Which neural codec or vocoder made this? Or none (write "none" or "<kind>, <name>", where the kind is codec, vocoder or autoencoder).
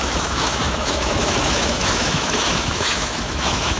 autoencoder, DAC-VAE